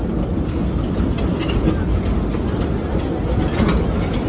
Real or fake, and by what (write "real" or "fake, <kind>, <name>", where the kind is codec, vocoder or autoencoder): real